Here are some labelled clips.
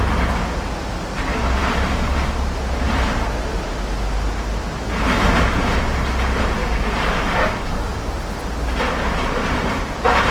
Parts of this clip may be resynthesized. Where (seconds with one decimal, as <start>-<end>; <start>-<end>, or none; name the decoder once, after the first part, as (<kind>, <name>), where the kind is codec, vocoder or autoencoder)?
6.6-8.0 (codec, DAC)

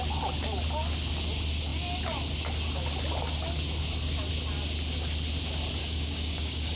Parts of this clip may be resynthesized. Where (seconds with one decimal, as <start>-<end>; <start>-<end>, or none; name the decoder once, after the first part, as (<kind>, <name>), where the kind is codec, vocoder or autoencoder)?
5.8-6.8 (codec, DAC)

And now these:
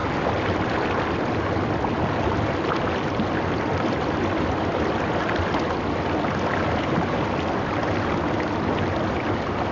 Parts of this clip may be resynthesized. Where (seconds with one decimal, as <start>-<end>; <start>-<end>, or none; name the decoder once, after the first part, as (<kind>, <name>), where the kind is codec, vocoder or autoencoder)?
none

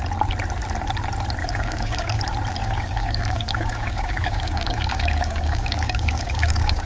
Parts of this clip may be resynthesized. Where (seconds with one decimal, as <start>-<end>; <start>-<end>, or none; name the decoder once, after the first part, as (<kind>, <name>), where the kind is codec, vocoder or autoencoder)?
1.4-2.2 (codec, DAC); 2.6-6.9

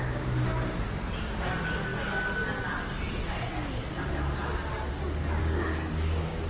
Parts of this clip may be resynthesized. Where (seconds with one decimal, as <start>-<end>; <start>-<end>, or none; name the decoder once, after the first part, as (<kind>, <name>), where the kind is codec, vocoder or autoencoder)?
5.4-6.5 (codec, DAC)